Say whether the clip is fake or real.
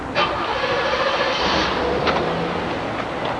real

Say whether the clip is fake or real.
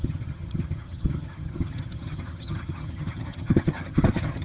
fake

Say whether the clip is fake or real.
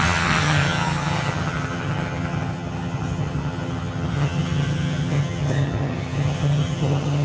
fake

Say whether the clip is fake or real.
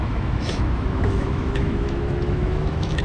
fake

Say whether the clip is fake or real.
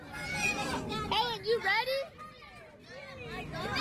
real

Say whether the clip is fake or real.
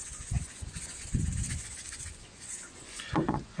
fake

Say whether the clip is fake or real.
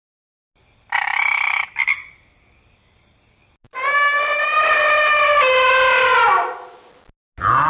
real